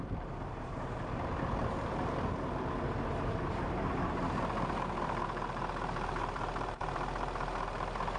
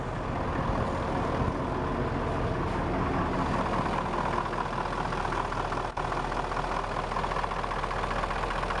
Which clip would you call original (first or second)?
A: second